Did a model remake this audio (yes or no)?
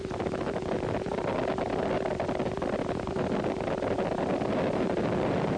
no